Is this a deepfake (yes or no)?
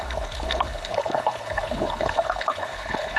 yes